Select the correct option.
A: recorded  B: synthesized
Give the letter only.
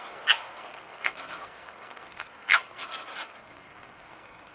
B